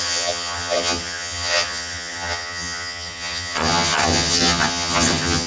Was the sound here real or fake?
fake